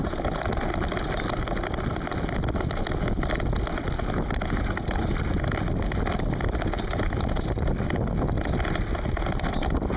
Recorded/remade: recorded